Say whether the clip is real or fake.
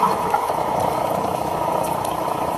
fake